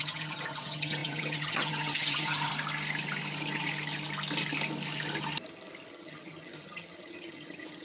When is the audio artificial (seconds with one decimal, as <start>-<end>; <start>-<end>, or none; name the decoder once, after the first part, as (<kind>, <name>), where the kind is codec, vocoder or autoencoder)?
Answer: 0.0-2.5 (vocoder, HiFi-GAN); 5.9-7.8